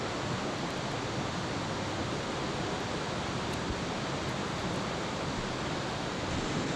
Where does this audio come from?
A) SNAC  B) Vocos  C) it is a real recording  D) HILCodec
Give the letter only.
C